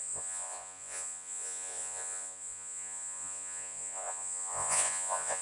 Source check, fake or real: fake